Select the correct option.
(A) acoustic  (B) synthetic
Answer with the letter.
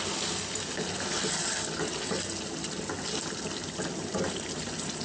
A